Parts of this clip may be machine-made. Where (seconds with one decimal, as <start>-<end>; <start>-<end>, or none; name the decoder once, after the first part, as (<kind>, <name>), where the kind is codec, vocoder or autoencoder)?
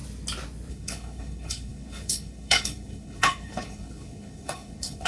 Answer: 0.7-5.1 (codec, HILCodec)